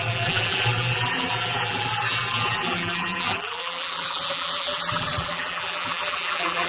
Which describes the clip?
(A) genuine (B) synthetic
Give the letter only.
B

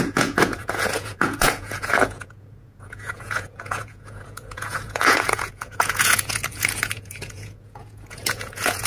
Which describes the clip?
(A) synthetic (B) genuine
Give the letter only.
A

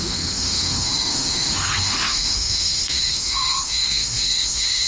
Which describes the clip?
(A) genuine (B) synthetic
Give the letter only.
B